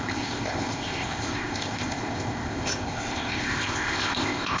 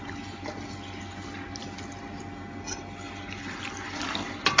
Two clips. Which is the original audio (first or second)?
second